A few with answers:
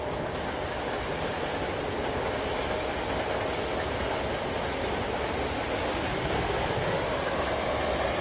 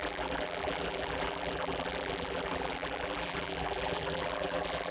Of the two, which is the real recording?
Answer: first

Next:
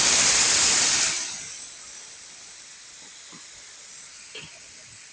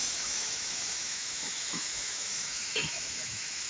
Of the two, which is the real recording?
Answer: first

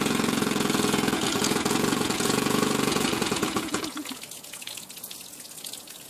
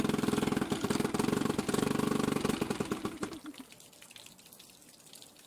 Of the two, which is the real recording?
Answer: second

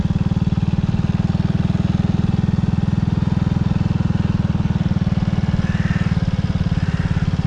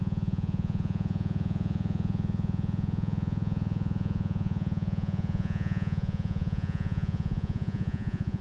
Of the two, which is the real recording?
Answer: first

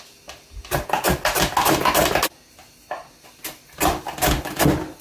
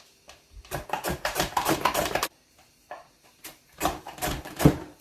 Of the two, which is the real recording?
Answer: first